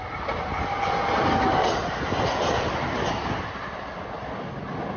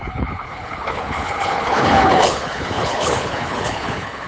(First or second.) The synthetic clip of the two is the second